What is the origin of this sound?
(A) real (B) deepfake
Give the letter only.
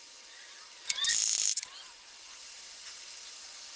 A